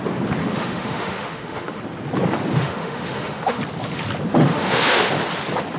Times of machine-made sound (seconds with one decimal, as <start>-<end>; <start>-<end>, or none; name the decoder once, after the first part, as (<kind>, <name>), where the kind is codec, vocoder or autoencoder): 0.4-1.8 (autoencoder, DAC-VAE); 2.6-3.6; 4.3-5.1